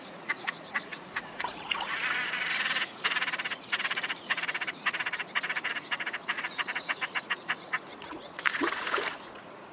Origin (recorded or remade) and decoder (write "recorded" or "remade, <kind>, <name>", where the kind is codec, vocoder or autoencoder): remade, vocoder, Vocos